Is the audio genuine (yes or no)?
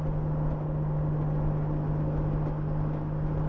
yes